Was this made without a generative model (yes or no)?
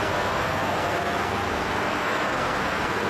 no